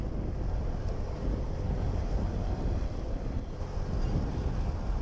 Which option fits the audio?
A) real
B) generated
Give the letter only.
A